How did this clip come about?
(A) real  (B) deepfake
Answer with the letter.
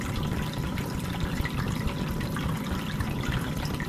A